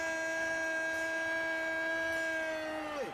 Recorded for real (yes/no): yes